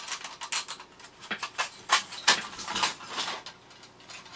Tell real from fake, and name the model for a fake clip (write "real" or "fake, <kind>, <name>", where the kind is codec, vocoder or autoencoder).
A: real